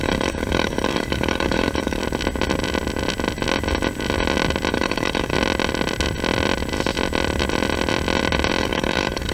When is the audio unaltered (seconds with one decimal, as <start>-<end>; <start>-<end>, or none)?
2.0-4.7; 5.3-8.6